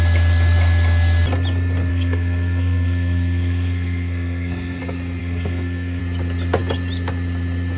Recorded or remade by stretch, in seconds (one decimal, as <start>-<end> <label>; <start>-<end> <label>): 0.0-1.9 recorded; 1.9-4.8 remade; 4.8-5.2 recorded; 5.2-6.0 remade; 6.0-7.8 recorded